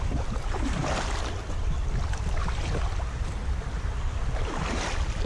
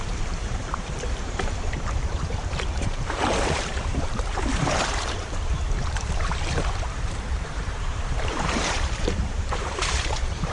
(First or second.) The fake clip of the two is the second